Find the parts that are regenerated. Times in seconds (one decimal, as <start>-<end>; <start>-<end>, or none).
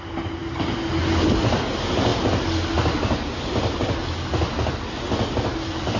none